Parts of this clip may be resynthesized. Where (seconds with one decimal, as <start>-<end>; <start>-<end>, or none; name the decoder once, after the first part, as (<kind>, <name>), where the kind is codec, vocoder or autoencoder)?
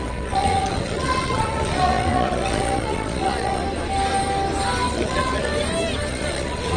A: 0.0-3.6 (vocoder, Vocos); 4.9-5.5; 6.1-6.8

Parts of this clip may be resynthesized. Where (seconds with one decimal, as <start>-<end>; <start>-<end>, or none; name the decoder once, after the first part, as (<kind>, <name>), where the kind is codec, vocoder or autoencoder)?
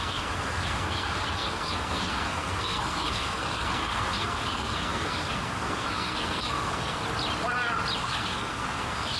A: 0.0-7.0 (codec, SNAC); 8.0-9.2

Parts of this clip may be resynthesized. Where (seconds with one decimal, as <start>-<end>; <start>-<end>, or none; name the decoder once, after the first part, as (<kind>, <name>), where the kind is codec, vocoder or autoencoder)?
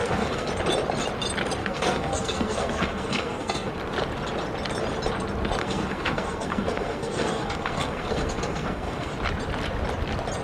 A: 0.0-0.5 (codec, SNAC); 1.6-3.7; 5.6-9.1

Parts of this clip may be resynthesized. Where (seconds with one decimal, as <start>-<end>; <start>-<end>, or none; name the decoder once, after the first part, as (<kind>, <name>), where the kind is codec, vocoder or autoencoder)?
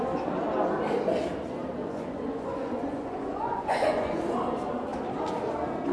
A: 1.8-4.2 (vocoder, Vocos)